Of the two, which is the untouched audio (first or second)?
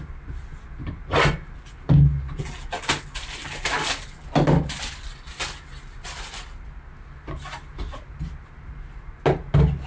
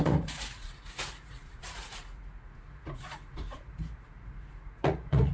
first